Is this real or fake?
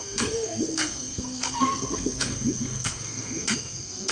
fake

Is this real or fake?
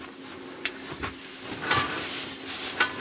real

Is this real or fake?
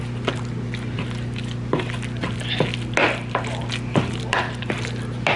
real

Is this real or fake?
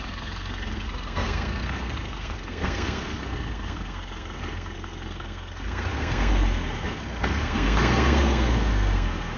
fake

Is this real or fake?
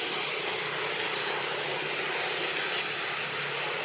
real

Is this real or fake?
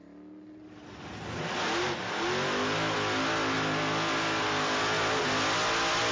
real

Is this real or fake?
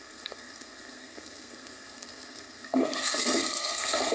fake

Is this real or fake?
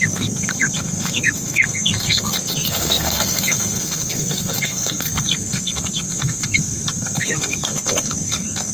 fake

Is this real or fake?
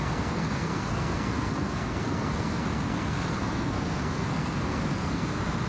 fake